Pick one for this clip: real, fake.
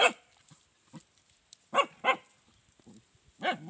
real